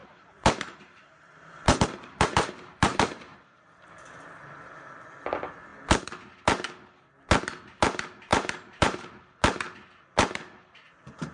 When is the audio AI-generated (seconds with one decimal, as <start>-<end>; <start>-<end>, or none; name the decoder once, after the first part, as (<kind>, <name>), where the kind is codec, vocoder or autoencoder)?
0.0-3.8 (vocoder, BigVGAN v2); 8.3-9.1